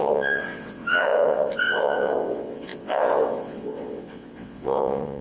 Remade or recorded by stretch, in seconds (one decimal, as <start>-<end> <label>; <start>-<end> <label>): 0.0-5.2 remade